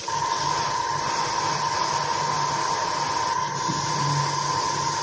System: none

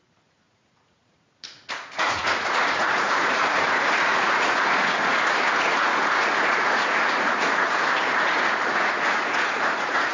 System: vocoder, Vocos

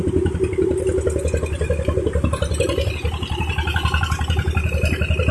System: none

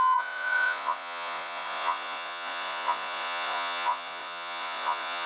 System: vocoder, Vocos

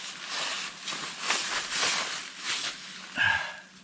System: none